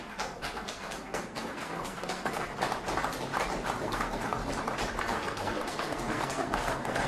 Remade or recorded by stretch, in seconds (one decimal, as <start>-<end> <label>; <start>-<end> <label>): 0.0-2.5 remade; 2.5-3.8 recorded; 3.8-4.4 remade; 4.4-5.0 recorded; 5.0-7.1 remade